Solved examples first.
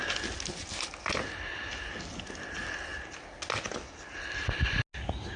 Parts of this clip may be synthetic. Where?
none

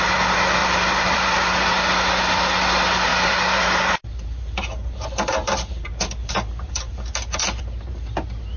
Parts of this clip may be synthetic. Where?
0.6-1.9 (vocoder, BigVGAN v2); 3.1-6.9

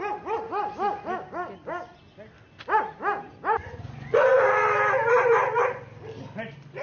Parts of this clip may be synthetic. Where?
3.6-4.5 (vocoder, Vocos)

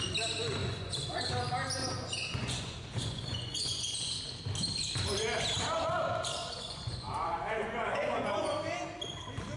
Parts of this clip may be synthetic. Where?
0.6-1.3 (vocoder, Vocos); 1.8-4.2; 6.4-8.5

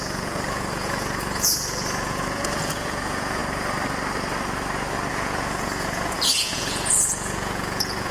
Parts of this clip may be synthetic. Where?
0.0-3.4 (vocoder, Vocos); 5.1-8.1

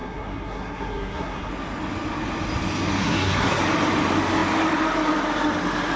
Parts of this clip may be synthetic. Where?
0.0-1.5 (codec, SNAC); 3.0-3.6

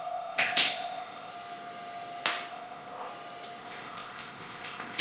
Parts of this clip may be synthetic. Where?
0.0-1.3 (codec, ZipCodec); 2.5-3.1; 3.6-5.0